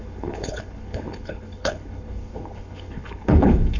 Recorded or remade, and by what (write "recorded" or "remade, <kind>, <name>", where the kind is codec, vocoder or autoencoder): remade, codec, HILCodec